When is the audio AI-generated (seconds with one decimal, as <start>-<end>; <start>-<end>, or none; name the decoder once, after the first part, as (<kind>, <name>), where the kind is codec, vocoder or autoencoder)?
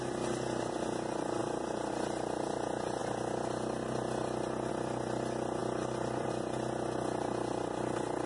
none